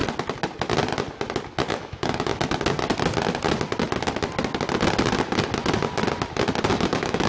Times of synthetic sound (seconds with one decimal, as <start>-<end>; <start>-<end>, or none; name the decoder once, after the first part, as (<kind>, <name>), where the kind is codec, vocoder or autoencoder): 1.7-2.3 (autoencoder, DAC-VAE); 6.7-7.3